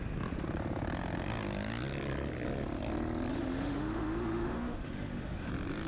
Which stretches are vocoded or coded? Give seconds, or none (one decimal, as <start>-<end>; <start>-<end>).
3.3-5.5